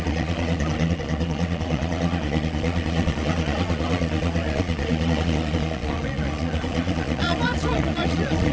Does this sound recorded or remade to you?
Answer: remade